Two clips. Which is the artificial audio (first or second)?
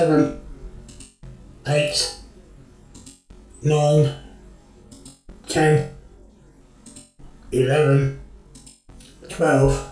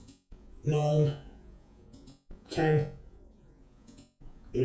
second